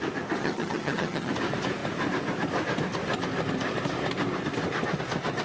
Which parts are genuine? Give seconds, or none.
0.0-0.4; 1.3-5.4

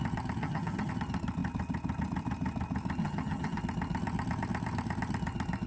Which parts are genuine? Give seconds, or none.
0.0-0.4; 0.9-3.0; 3.6-5.7

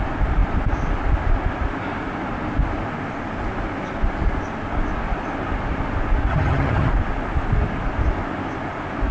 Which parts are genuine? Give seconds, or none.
0.0-6.3; 6.9-9.1

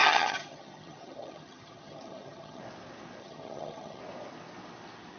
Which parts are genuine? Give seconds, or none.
2.6-3.2; 4.0-5.2